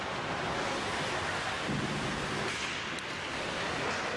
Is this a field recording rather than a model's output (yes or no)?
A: yes